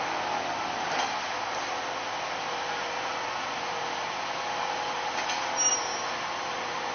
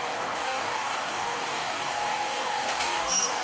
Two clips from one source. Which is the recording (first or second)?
first